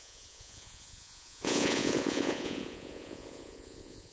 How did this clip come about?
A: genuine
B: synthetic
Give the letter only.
B